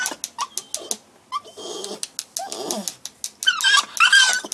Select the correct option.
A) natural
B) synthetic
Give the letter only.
A